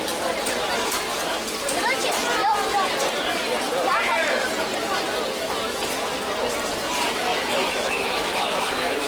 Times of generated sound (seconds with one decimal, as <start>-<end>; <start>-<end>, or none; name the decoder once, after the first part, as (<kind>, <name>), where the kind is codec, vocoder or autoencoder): 7.3-9.1 (autoencoder, DAC-VAE)